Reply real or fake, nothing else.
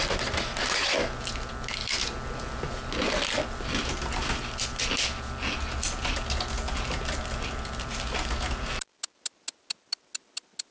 real